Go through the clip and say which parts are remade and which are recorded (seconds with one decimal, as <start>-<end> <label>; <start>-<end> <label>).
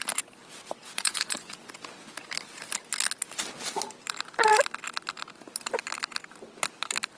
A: 0.0-0.8 recorded; 0.8-1.7 remade; 1.7-7.2 recorded